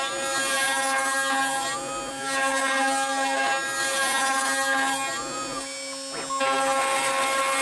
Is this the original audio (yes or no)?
yes